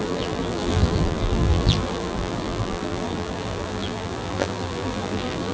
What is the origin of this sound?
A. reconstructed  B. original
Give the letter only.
A